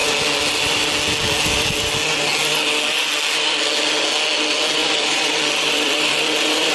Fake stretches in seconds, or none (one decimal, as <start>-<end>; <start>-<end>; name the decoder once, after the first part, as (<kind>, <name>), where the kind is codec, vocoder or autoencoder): 4.8-6.7 (vocoder, BigVGAN v2)